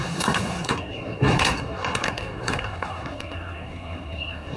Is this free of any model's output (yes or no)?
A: no